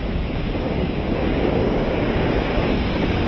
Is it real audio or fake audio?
fake